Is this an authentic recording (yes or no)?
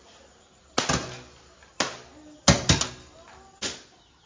yes